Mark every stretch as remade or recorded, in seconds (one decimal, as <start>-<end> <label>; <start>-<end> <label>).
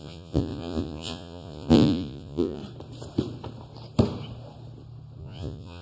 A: 0.0-2.6 remade; 2.6-5.2 recorded; 5.2-5.8 remade